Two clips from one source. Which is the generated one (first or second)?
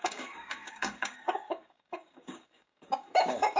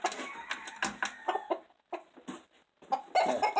first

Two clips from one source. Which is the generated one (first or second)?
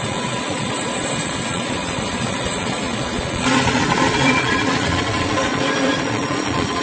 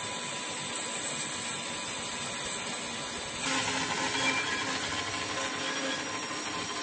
first